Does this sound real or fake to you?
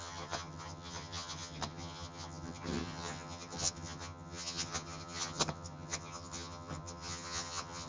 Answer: fake